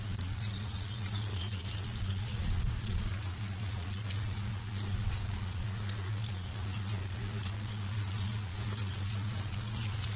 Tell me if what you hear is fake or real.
fake